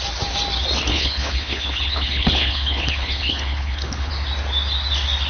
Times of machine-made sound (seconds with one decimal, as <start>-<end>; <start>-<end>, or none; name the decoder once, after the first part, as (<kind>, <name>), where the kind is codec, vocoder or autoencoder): 0.9-4.1 (codec, HILCodec)